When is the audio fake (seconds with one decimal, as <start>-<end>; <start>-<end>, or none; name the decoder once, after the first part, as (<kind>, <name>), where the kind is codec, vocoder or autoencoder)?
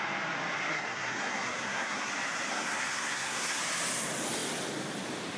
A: 0.7-2.1 (codec, SNAC); 2.5-3.6